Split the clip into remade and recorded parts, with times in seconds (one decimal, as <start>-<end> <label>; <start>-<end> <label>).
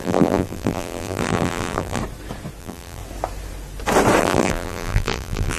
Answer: 0.0-2.0 remade; 2.0-2.6 recorded; 2.6-3.0 remade; 3.0-4.2 recorded; 4.2-5.6 remade